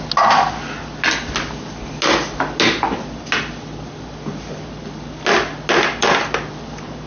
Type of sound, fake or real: real